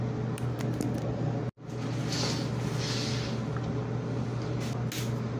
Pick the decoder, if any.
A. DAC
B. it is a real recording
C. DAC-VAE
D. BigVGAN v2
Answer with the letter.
B